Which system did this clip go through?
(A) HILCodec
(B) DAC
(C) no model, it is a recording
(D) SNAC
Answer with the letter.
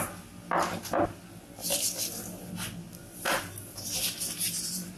C